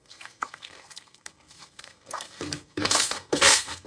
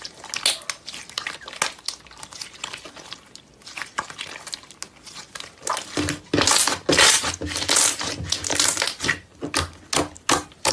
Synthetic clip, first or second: first